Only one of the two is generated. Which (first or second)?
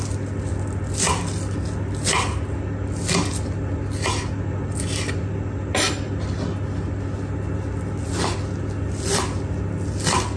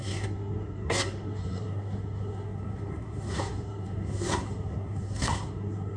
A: second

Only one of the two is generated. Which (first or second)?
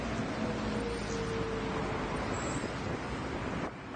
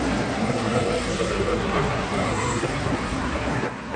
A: second